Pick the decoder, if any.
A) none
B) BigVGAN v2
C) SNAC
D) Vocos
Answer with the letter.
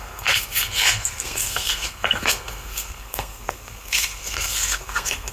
C